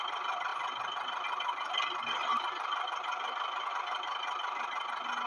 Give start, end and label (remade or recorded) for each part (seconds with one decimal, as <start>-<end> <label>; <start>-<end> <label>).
0.0-5.3 recorded